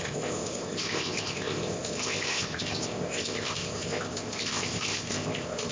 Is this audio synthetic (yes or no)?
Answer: yes